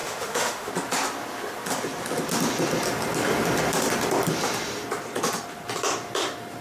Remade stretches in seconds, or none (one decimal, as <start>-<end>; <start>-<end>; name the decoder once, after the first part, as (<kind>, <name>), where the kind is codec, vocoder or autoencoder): 0.0-0.7 (autoencoder, DAC-VAE)